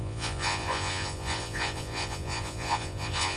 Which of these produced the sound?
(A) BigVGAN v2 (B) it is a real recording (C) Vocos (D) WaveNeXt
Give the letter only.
C